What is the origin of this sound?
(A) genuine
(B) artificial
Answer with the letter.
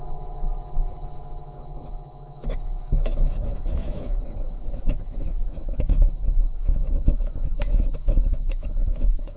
B